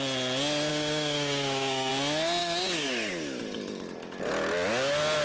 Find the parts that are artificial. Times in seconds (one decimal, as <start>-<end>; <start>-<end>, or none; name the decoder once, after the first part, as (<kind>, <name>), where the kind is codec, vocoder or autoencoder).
0.7-1.9 (codec, DAC); 2.4-3.1